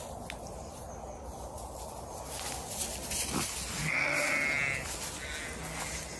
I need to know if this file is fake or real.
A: real